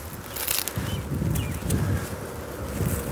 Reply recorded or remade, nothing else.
recorded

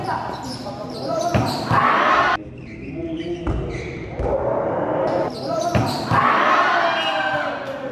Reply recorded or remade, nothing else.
recorded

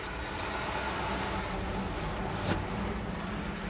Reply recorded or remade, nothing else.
recorded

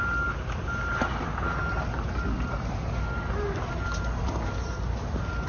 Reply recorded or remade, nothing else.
recorded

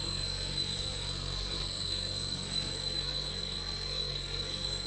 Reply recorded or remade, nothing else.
remade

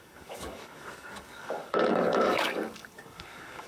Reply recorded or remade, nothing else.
remade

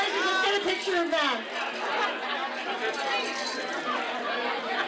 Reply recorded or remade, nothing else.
recorded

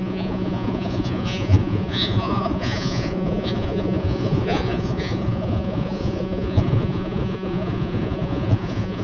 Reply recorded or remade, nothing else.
remade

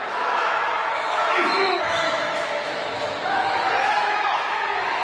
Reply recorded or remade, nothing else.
remade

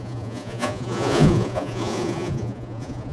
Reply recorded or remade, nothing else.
remade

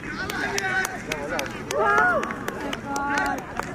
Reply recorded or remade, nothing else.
recorded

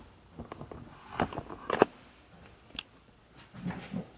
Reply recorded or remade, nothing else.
recorded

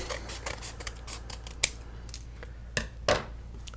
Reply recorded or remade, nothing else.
recorded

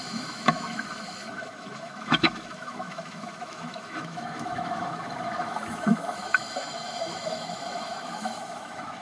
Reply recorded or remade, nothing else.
remade